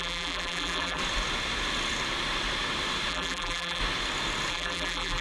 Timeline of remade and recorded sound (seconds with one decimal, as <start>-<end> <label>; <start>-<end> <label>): 0.0-1.0 remade; 1.0-3.1 recorded; 3.1-3.8 remade; 3.8-4.5 recorded; 4.5-5.2 remade